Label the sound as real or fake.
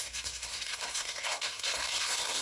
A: fake